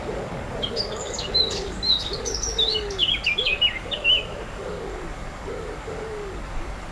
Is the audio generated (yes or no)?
yes